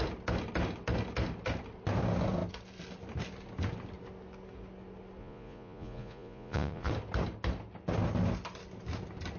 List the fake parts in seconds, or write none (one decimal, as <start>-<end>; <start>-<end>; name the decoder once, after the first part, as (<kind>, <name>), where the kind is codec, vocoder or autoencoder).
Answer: 5.2-6.9 (vocoder, Vocos)